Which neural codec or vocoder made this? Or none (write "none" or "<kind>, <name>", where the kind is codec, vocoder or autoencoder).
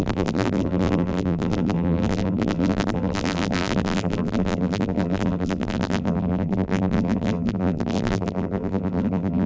vocoder, BigVGAN v2